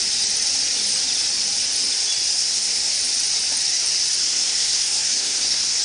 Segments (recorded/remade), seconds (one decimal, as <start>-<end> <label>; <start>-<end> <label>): 0.0-2.3 recorded; 2.3-2.9 remade; 2.9-4.2 recorded; 4.2-5.8 remade